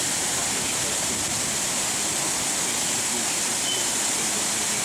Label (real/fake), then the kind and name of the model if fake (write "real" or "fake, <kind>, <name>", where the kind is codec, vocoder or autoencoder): real